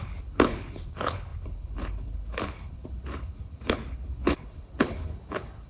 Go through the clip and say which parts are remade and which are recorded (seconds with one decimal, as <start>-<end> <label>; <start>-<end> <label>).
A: 0.0-5.7 remade